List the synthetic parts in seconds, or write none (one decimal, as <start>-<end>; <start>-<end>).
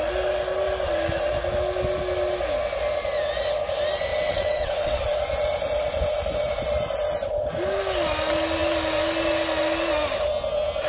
4.1-5.0